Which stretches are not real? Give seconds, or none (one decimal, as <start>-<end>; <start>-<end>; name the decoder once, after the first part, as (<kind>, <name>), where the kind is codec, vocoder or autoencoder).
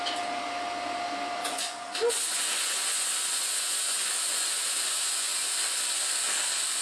1.4-5.5 (vocoder, Vocos)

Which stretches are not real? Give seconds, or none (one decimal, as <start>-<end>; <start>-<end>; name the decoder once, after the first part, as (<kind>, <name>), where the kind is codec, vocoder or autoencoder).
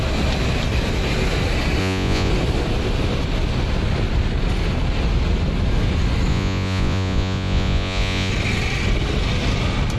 1.8-2.3 (vocoder, Vocos); 6.3-8.3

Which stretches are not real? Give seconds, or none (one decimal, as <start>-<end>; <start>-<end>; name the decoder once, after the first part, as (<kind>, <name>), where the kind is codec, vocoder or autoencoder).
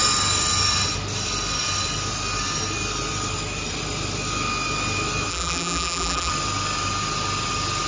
5.3-6.3 (vocoder, BigVGAN v2)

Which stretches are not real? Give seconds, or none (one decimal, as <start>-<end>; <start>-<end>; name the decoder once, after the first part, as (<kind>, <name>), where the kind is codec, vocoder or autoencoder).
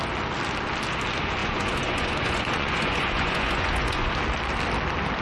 1.4-4.1 (vocoder, Vocos)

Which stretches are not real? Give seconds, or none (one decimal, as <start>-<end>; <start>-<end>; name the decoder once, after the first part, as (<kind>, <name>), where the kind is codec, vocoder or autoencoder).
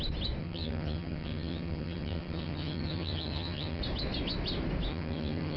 0.4-3.8 (vocoder, HiFi-GAN); 4.9-5.6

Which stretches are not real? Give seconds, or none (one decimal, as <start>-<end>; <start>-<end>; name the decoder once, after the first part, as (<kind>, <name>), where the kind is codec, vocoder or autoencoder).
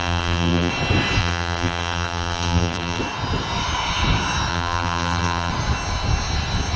0.0-0.7 (vocoder, BigVGAN v2); 1.2-3.0; 4.5-5.5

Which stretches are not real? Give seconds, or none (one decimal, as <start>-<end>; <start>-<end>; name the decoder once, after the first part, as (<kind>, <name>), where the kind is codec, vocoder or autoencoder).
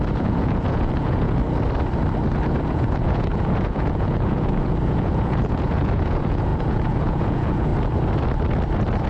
0.0-1.4 (vocoder, Vocos); 2.7-7.7